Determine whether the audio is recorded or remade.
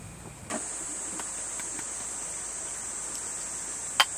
recorded